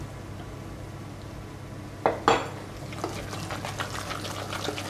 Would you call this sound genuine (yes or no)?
yes